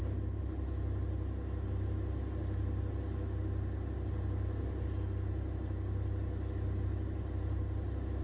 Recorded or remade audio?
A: recorded